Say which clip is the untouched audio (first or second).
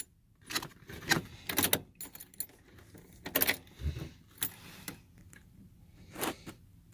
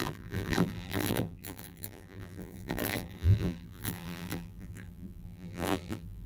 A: first